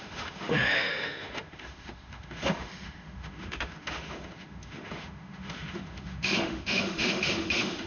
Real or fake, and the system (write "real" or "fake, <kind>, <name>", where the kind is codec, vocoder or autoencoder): fake, autoencoder, DAC-VAE